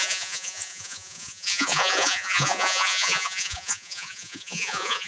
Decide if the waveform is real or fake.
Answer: fake